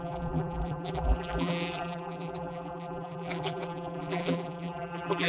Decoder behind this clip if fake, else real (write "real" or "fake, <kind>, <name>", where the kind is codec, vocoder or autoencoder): fake, vocoder, BigVGAN v2